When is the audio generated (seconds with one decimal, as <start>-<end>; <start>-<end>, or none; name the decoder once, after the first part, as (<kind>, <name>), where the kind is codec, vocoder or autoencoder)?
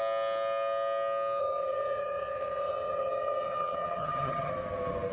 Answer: 1.4-4.5 (vocoder, HiFi-GAN)